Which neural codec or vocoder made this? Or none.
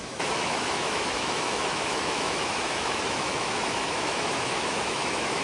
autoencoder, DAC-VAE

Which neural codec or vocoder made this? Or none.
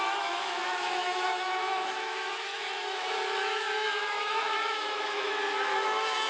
autoencoder, DAC-VAE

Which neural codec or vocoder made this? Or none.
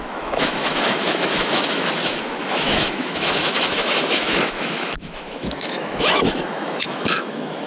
autoencoder, DAC-VAE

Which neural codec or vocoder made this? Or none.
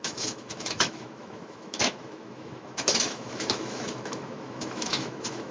autoencoder, DAC-VAE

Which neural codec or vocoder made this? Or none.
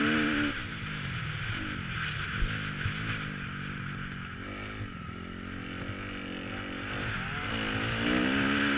none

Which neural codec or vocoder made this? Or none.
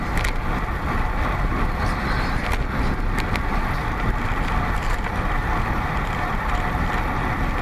none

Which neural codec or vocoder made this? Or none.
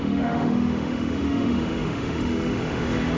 autoencoder, DAC-VAE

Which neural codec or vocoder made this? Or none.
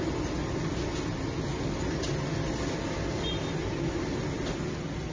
none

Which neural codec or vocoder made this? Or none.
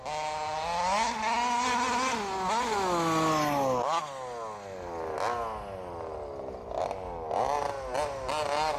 none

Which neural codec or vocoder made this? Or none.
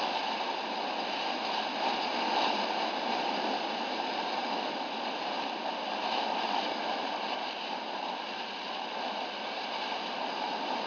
none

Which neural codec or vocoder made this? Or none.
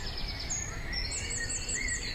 none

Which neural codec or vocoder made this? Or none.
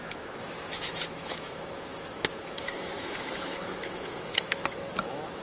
autoencoder, DAC-VAE